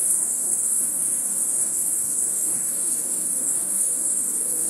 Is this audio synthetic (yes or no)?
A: yes